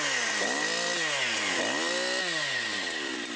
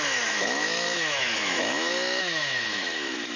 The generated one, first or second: second